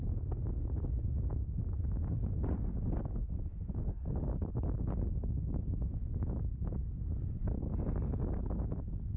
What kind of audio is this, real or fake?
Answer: real